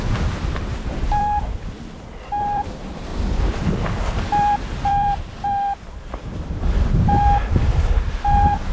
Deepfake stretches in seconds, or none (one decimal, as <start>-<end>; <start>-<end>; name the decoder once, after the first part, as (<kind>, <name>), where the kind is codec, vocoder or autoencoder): 0.0-3.1 (vocoder, BigVGAN v2); 3.6-8.7